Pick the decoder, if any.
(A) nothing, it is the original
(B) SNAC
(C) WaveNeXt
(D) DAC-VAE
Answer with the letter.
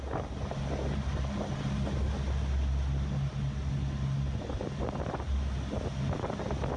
A